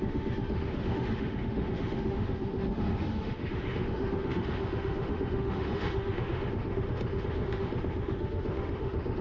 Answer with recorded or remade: remade